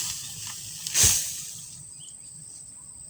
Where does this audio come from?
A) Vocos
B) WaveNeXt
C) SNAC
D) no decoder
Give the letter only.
D